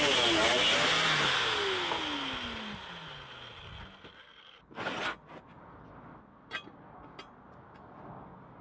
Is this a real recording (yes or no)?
yes